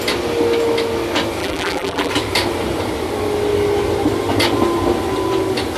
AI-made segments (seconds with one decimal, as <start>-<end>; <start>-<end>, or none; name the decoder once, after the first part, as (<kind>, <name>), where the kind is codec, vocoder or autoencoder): 1.4-2.1 (vocoder, BigVGAN v2)